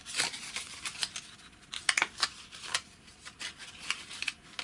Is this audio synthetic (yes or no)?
no